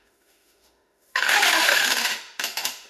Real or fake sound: fake